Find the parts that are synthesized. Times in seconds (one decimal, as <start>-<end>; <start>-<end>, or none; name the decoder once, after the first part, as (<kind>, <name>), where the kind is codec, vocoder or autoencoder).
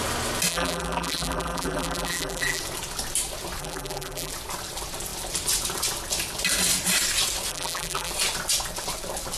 0.5-2.6 (vocoder, BigVGAN v2); 3.6-4.3; 7.5-8.1